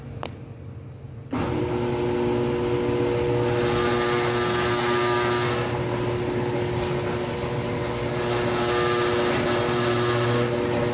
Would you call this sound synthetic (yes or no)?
no